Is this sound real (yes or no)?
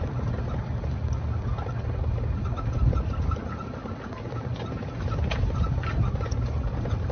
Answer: yes